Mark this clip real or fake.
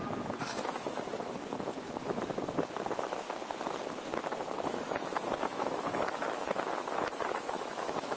fake